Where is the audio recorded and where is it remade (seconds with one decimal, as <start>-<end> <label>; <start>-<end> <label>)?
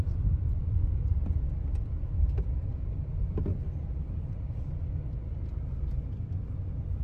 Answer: 0.0-0.6 recorded; 0.6-1.1 remade; 1.1-2.7 recorded; 2.7-4.9 remade; 4.9-7.0 recorded